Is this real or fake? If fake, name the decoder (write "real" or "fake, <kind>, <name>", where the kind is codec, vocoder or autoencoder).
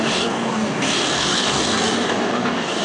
fake, codec, DAC